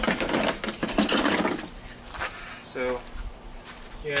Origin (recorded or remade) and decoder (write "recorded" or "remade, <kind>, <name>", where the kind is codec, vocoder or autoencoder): recorded